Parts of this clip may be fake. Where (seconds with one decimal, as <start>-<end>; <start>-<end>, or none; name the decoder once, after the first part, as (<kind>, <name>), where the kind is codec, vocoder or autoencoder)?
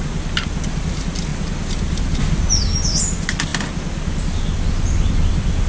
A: none